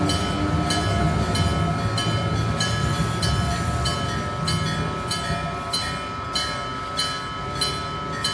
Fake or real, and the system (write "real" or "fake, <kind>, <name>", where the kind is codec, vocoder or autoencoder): real